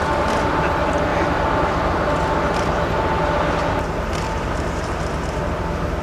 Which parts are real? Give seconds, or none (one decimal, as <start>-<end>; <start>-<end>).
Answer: 0.0-6.0